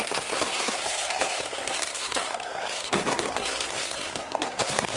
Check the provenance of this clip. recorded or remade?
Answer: remade